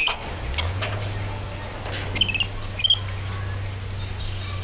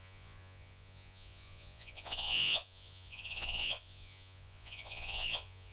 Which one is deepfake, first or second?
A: second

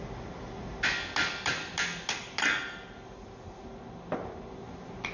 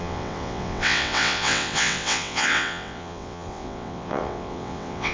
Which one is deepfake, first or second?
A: second